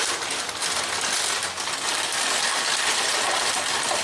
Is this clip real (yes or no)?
yes